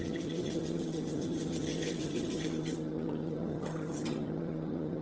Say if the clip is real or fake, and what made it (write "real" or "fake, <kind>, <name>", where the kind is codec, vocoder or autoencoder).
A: fake, vocoder, HiFi-GAN